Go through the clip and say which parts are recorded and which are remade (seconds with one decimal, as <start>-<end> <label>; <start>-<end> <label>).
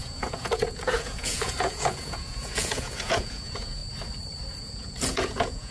0.0-3.8 remade; 3.8-4.6 recorded; 4.6-5.7 remade